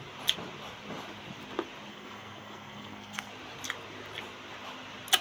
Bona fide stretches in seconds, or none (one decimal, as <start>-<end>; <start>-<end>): 0.0-1.9; 3.3-5.2